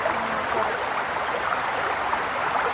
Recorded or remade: remade